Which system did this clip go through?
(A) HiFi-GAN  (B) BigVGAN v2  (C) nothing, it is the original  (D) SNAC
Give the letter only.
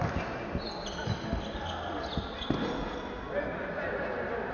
C